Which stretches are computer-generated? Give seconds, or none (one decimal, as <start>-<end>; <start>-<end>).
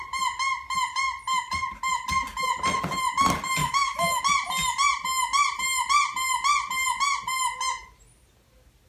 3.6-4.2